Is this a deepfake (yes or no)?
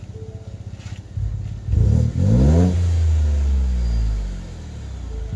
no